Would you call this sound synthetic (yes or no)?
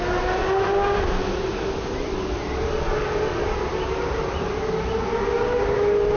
no